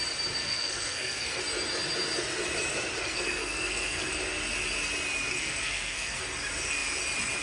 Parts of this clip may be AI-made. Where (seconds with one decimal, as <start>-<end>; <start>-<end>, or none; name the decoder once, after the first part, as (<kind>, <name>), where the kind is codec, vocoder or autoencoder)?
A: 0.4-1.4 (codec, SNAC); 3.0-4.1; 5.3-6.2